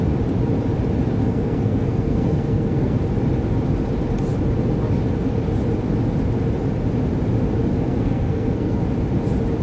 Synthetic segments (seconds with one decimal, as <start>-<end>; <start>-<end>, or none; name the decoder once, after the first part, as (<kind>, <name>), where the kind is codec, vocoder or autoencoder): 1.2-3.0 (codec, SNAC); 7.7-8.8

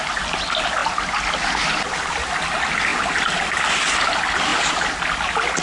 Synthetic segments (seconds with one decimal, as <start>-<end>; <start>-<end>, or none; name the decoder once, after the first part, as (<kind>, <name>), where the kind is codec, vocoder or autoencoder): none